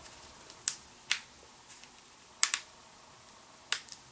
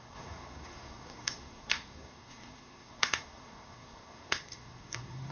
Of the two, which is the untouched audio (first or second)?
first